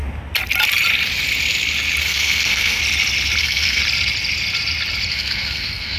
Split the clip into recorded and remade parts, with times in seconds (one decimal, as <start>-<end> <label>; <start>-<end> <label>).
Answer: 0.0-2.0 recorded; 2.0-2.8 remade; 2.8-3.4 recorded; 3.4-3.8 remade; 3.8-5.1 recorded; 5.1-6.0 remade